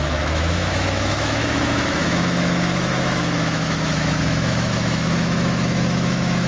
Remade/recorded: remade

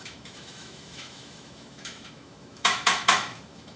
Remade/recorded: remade